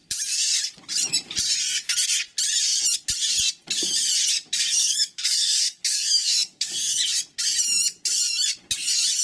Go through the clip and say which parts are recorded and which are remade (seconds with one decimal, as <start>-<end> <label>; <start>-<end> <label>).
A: 0.0-4.8 recorded; 4.8-7.0 remade; 7.0-9.2 recorded